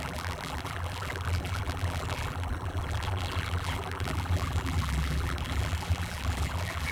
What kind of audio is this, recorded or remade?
remade